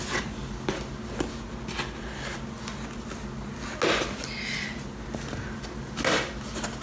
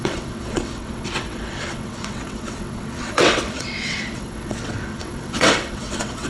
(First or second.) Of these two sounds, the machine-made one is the second